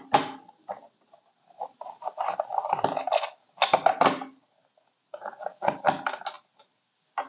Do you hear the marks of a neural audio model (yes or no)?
no